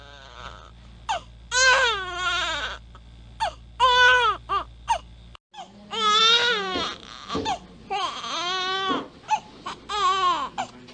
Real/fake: real